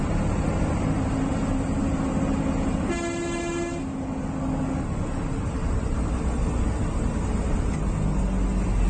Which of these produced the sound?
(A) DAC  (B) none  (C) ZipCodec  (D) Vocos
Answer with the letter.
B